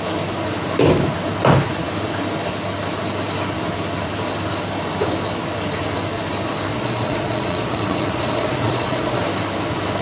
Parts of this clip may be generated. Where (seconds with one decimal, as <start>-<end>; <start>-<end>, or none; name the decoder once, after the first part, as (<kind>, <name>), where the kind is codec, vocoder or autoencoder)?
6.7-9.2 (vocoder, Vocos)